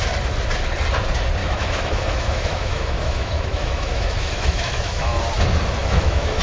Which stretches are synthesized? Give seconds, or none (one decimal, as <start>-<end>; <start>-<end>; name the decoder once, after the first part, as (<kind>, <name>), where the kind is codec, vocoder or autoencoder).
1.4-5.2 (autoencoder, DAC-VAE); 5.8-6.4